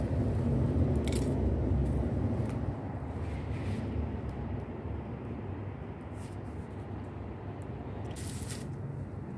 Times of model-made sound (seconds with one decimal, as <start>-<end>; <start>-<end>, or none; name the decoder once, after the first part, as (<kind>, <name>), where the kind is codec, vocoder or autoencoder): none